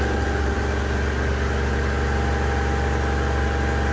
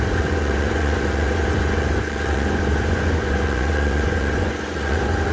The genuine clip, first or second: first